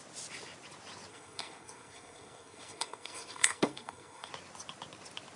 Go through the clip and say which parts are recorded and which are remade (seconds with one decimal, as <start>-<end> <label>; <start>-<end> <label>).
0.0-1.1 recorded; 1.1-4.3 remade; 4.3-5.4 recorded